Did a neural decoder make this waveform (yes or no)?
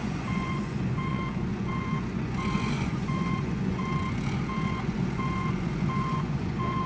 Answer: yes